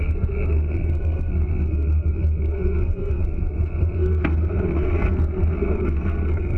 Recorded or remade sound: remade